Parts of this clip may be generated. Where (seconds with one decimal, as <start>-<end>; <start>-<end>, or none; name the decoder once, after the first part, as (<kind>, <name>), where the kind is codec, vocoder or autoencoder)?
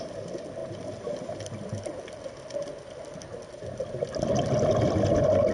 none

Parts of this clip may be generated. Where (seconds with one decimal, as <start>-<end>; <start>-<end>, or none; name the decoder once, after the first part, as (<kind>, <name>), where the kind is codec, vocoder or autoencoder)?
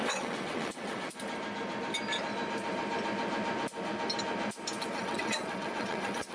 0.0-1.1 (vocoder, WaveNeXt); 4.9-6.3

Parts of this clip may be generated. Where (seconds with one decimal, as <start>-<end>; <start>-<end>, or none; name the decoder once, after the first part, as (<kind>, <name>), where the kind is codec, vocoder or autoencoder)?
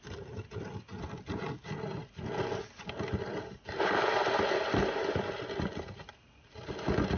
none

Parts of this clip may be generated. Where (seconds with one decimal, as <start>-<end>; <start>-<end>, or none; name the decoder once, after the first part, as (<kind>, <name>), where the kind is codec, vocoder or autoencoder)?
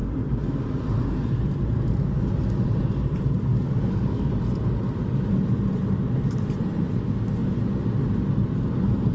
3.5-4.3 (codec, DAC)